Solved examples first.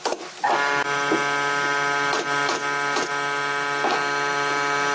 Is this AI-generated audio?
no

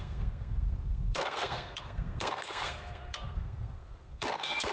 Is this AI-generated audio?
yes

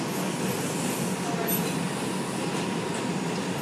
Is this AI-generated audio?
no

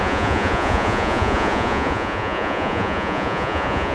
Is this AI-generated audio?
yes